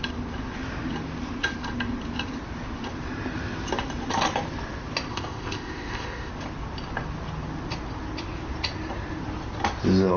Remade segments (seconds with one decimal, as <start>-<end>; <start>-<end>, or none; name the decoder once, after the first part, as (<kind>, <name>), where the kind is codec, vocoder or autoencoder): 5.1-6.3 (codec, ZipCodec)